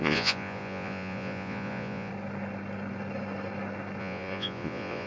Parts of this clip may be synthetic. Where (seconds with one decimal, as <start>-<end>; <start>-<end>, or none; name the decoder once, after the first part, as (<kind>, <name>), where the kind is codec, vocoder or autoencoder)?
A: 0.0-2.1 (vocoder, Vocos); 4.0-5.1